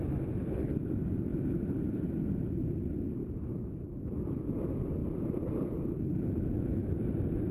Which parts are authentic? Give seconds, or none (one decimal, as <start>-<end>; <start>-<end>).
0.0-1.3; 2.2-3.2; 4.1-5.0; 5.8-7.5